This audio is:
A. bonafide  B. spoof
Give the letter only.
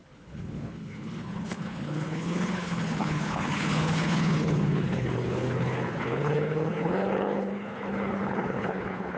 B